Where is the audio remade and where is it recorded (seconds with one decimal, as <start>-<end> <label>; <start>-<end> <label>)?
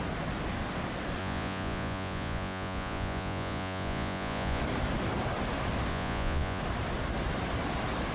0.0-1.2 recorded; 1.2-4.6 remade; 4.6-5.9 recorded; 5.9-6.6 remade; 6.6-8.1 recorded